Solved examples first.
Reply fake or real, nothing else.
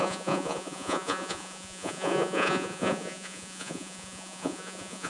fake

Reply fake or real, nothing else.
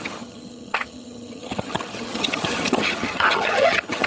fake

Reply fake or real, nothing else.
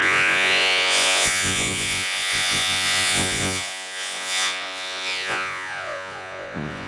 fake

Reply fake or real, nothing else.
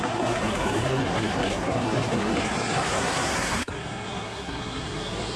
fake